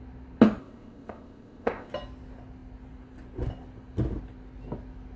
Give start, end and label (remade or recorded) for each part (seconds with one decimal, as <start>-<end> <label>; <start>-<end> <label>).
0.0-0.6 recorded; 0.6-1.9 remade; 1.9-5.2 recorded